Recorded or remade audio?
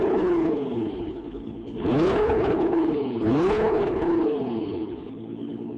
remade